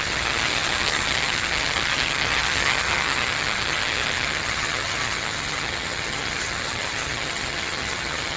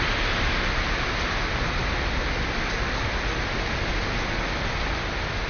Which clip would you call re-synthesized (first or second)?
first